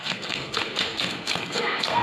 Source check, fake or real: fake